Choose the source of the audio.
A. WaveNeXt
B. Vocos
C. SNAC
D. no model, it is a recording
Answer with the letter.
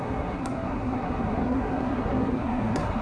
C